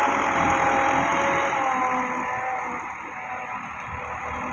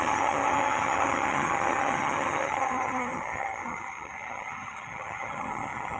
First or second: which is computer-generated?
second